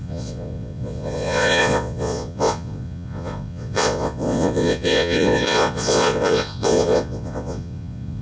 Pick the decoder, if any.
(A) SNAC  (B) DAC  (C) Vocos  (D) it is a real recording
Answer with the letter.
C